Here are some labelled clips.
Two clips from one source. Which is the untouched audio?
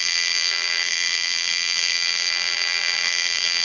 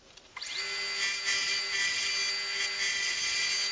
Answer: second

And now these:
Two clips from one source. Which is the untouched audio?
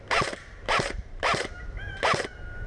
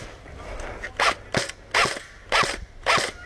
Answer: second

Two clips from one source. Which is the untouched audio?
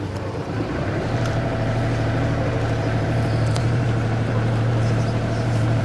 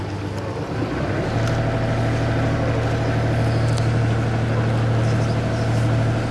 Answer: second